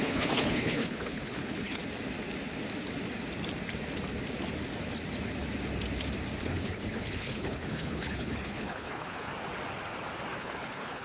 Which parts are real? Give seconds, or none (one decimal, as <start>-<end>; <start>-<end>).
1.8-6.4; 9.3-10.4